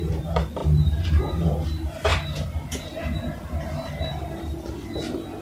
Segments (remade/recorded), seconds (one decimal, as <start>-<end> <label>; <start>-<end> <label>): 0.0-5.4 recorded